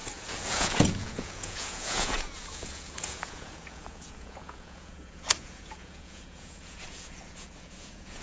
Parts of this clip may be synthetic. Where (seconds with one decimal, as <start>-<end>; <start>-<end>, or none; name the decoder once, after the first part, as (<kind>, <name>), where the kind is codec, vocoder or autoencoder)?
0.0-8.2 (vocoder, Vocos)